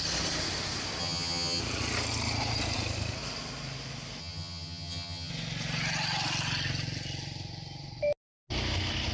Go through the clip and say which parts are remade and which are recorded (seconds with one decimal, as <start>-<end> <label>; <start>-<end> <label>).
0.0-1.0 recorded; 1.0-1.6 remade; 1.6-4.2 recorded; 4.2-5.3 remade; 5.3-9.1 recorded